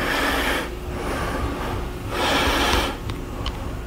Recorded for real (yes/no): yes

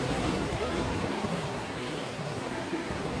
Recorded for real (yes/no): no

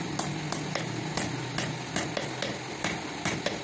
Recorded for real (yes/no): yes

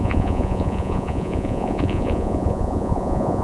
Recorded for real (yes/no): no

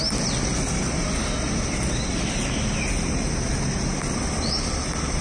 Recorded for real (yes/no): yes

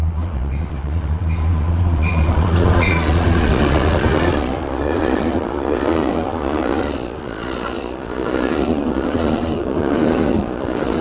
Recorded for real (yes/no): no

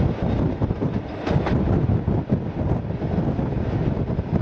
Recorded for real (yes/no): yes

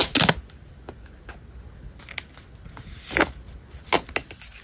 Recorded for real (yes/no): yes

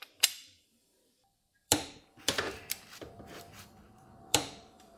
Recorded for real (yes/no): no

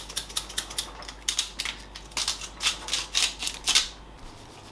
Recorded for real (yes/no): yes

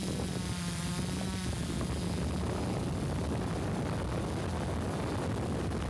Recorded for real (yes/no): yes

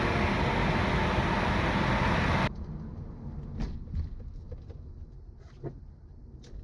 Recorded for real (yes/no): yes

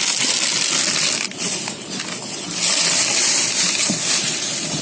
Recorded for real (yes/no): yes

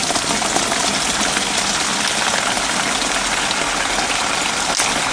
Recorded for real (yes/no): yes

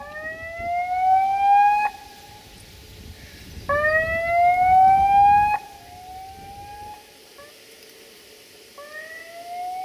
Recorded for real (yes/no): yes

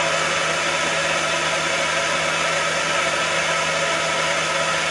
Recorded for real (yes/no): yes